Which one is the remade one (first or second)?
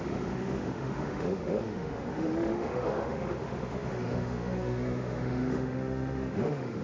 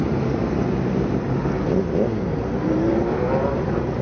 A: first